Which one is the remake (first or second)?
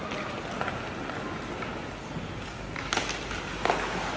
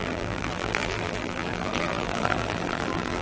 second